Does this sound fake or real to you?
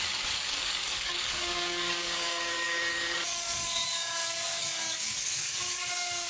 fake